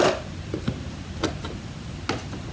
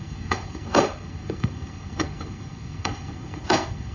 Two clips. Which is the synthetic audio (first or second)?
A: second